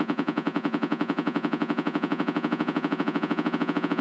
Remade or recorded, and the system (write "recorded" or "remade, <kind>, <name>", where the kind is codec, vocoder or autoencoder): remade, vocoder, Vocos